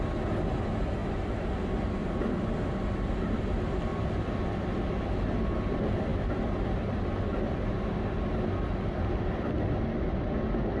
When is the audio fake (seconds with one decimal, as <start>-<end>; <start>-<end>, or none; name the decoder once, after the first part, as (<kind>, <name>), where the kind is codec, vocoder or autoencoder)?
none